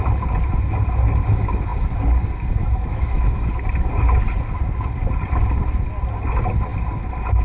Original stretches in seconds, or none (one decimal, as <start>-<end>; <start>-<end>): 0.0-2.6; 3.5-7.4